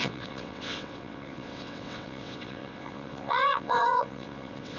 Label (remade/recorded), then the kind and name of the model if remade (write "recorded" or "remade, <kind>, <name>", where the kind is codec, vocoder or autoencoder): remade, vocoder, WaveNeXt